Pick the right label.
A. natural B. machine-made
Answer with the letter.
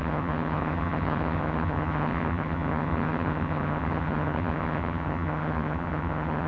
B